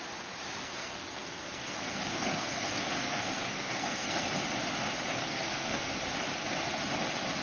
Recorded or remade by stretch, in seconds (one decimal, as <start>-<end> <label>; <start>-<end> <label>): 0.0-0.6 recorded; 0.6-4.3 remade; 4.3-5.2 recorded; 5.2-5.9 remade; 5.9-7.4 recorded